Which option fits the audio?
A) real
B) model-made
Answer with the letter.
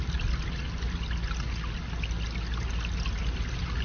A